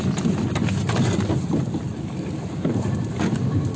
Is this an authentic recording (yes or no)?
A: yes